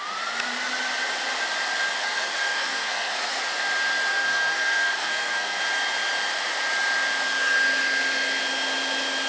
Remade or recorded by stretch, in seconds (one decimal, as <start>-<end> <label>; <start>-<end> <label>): 0.0-2.0 recorded; 2.0-3.4 remade; 3.4-4.1 recorded; 4.1-5.6 remade; 5.6-9.3 recorded